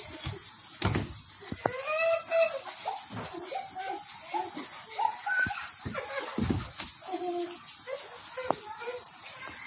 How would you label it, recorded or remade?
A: recorded